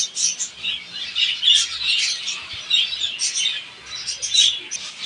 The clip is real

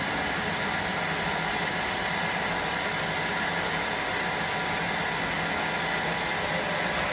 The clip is real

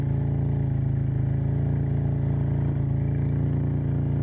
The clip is real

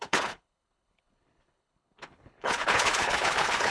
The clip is fake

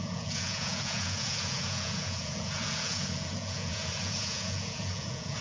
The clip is fake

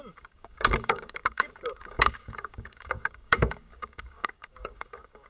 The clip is fake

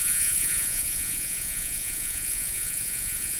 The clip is fake